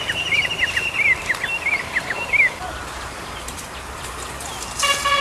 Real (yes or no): yes